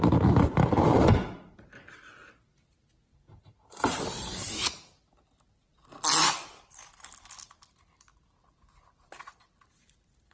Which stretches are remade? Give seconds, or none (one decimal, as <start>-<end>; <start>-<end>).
none